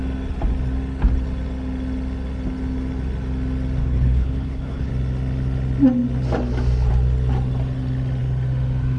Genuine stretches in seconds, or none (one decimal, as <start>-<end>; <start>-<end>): 0.0-3.8; 4.9-9.0